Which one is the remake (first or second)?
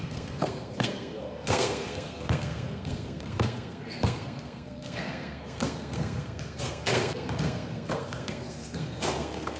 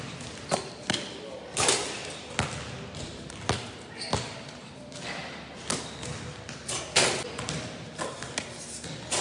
first